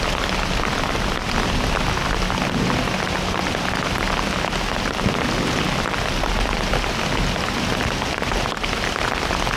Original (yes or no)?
yes